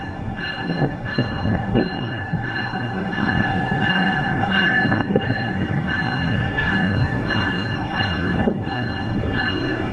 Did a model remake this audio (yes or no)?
yes